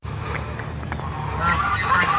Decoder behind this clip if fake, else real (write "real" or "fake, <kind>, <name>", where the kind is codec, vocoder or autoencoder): real